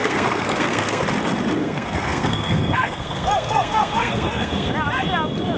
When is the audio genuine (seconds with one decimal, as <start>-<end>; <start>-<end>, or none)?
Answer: 1.0-1.6; 4.7-5.6